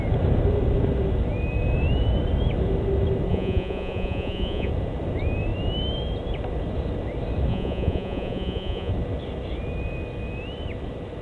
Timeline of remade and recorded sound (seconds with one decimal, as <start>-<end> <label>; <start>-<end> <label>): 0.0-3.3 recorded; 3.3-4.7 remade; 4.7-7.5 recorded; 7.5-8.9 remade; 8.9-11.2 recorded